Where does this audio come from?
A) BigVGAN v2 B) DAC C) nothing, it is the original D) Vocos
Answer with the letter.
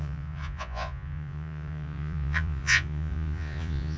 D